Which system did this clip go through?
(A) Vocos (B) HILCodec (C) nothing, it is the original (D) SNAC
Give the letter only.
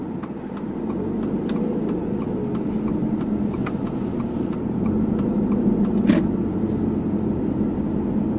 C